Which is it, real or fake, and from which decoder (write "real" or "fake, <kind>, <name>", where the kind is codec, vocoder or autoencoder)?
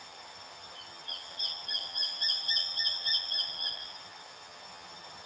fake, vocoder, HiFi-GAN